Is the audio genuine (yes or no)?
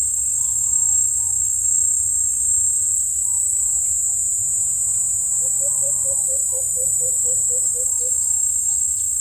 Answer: yes